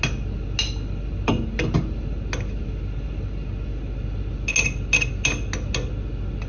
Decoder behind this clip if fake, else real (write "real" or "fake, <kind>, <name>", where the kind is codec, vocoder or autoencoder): real